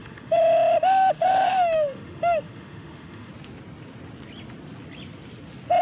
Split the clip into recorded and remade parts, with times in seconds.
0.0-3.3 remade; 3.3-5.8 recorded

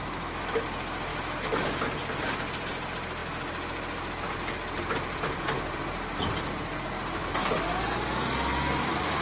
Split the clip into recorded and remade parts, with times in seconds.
0.0-0.6 remade; 0.6-1.1 recorded; 1.1-1.8 remade; 1.8-9.2 recorded

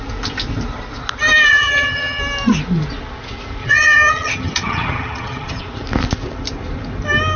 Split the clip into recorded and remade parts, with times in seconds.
0.0-1.5 recorded; 1.5-2.2 remade; 2.2-3.6 recorded; 3.6-5.6 remade; 5.6-7.4 recorded

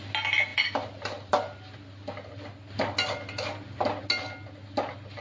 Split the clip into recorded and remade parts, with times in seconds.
0.0-0.5 recorded; 0.5-1.3 remade; 1.3-5.2 recorded

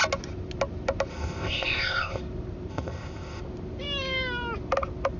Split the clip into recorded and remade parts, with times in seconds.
0.0-1.1 recorded; 1.1-2.2 remade; 2.2-2.7 recorded; 2.7-3.4 remade; 3.4-5.2 recorded

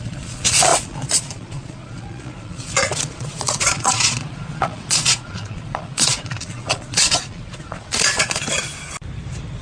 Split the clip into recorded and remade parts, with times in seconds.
0.0-8.4 remade; 8.4-9.6 recorded

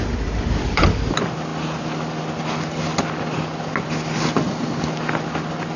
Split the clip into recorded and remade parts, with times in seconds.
0.0-5.8 recorded